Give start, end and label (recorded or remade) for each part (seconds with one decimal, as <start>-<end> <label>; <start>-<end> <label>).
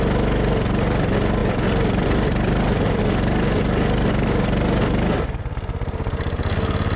0.0-1.4 recorded; 1.4-3.0 remade; 3.0-7.0 recorded